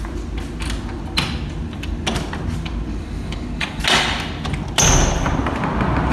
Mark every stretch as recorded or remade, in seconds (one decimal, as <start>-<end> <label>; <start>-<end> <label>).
0.0-2.9 recorded; 2.9-3.8 remade; 3.8-6.1 recorded